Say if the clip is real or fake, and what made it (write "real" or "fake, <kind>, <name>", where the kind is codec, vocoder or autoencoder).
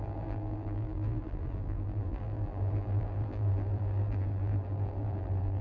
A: fake, vocoder, BigVGAN v2